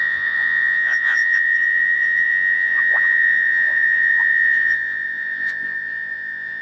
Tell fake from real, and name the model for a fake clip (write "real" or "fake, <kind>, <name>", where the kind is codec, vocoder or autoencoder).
fake, vocoder, Vocos